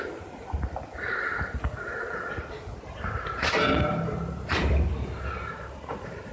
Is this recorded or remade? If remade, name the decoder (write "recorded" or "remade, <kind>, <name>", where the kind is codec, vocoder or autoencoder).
remade, vocoder, BigVGAN v2